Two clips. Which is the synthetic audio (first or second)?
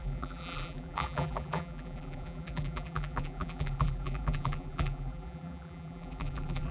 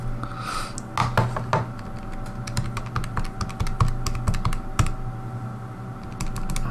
first